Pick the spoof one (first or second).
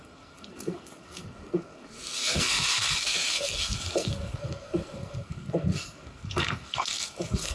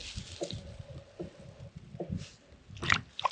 first